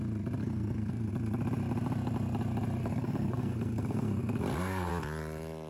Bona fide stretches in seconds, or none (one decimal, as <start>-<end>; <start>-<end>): 0.0-0.4; 1.1-2.8; 4.9-5.7